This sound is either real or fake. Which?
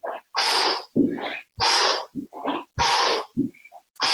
real